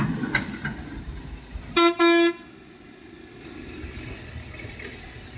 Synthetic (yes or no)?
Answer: no